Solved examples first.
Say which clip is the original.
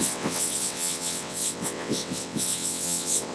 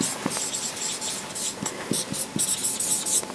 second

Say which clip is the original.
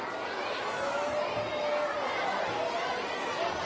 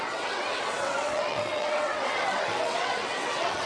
first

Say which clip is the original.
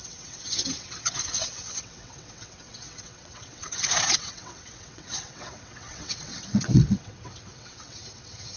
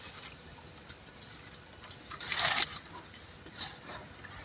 second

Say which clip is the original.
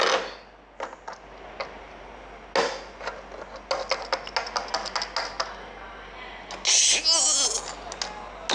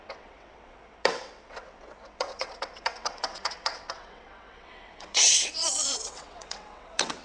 first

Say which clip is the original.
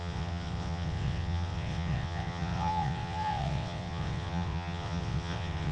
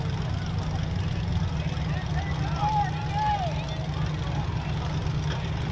second